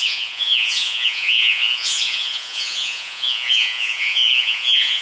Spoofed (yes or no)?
yes